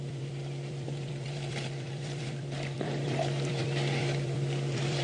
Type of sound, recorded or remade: remade